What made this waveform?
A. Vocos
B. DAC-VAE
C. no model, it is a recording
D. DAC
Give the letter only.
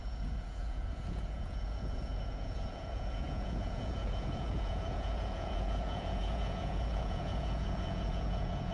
A